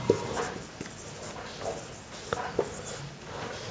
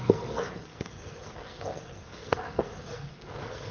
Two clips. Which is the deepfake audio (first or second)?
second